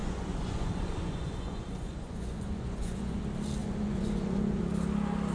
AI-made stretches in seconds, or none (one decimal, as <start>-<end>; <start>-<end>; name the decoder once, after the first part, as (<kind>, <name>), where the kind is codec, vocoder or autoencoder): 0.0-3.2 (vocoder, Vocos); 3.6-4.6